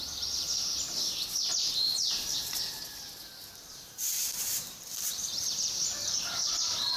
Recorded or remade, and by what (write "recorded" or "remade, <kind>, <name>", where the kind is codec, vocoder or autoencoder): remade, vocoder, BigVGAN v2